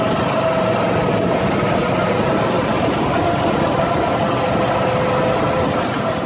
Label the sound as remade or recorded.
recorded